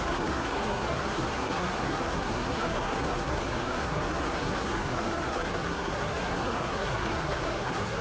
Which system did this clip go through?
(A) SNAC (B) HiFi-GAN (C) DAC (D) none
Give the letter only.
A